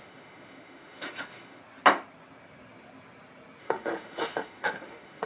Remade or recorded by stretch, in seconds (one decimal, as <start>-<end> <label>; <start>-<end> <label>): 0.0-1.6 remade; 1.6-3.6 recorded; 3.6-5.3 remade